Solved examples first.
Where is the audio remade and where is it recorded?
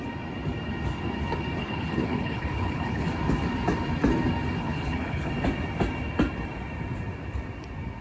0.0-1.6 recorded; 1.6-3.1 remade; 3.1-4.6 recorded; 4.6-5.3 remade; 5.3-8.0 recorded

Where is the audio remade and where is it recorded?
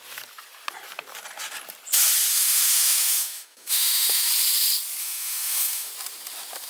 0.0-2.3 recorded; 2.3-4.3 remade; 4.3-5.0 recorded; 5.0-5.9 remade; 5.9-6.7 recorded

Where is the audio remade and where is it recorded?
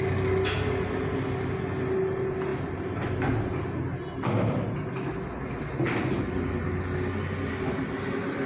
0.0-8.5 recorded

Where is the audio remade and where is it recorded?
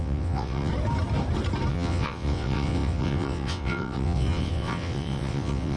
0.0-0.7 remade; 0.7-1.7 recorded; 1.7-5.8 remade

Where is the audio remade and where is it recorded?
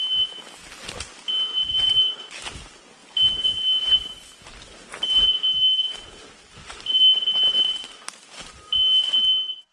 0.0-9.7 recorded